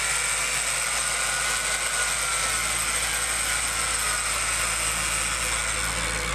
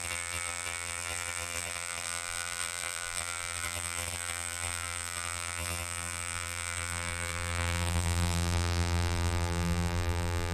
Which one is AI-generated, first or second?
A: second